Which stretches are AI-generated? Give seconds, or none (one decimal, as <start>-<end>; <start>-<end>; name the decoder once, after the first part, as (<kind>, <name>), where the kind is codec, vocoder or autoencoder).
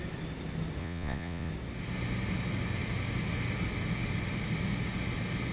0.8-1.5 (vocoder, Vocos)